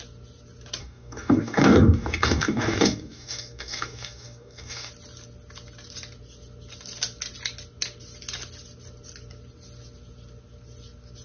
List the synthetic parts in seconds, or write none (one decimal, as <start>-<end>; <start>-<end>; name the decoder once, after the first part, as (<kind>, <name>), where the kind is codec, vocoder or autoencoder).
0.8-4.9 (codec, DAC)